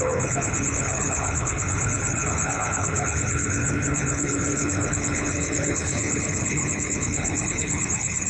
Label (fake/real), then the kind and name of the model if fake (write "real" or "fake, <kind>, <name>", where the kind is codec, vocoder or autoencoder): fake, codec, HILCodec